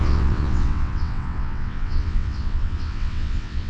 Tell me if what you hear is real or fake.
fake